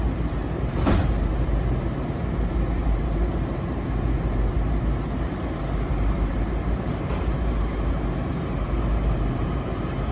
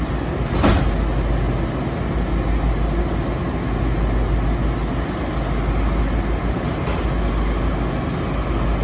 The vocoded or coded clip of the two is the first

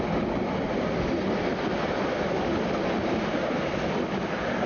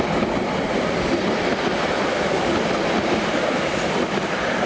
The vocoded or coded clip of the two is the second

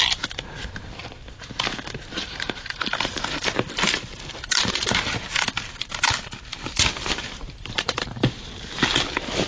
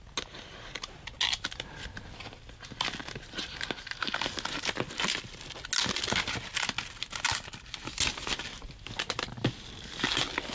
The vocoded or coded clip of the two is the first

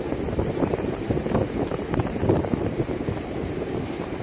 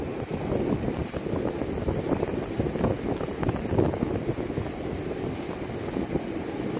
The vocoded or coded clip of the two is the first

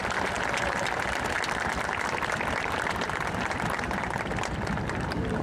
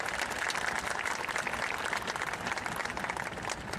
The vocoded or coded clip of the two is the first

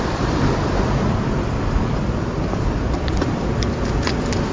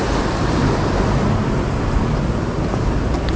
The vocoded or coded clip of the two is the first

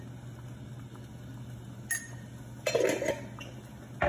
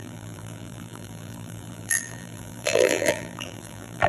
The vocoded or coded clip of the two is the second